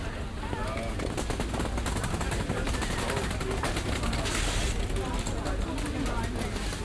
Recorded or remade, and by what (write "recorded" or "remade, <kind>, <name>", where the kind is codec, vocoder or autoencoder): recorded